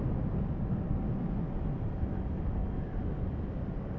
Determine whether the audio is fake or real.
real